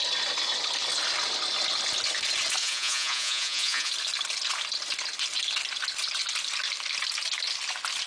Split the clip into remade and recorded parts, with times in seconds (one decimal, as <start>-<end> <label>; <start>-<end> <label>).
0.0-2.6 recorded; 2.6-3.9 remade; 3.9-8.1 recorded